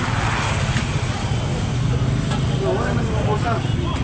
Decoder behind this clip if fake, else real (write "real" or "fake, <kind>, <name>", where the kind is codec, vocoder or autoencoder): real